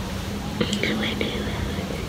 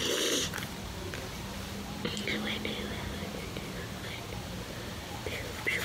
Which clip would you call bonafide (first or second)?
second